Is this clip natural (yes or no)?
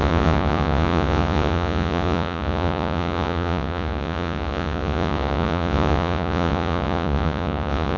no